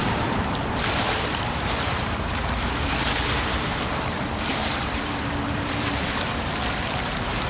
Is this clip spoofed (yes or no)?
yes